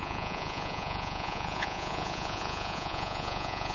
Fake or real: fake